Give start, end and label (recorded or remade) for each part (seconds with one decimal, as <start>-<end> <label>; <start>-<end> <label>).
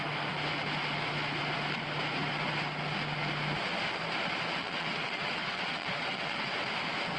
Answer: 0.0-4.6 recorded; 4.6-6.5 remade; 6.5-7.2 recorded